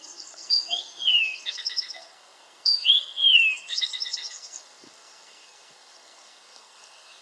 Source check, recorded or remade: remade